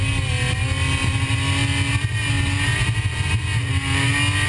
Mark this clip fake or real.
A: real